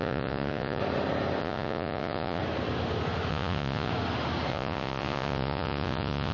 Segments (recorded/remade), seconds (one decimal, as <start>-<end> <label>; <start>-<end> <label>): 0.0-0.8 remade; 0.8-1.4 recorded; 1.4-2.4 remade; 2.4-3.3 recorded; 3.3-3.9 remade; 3.9-4.5 recorded; 4.5-6.3 remade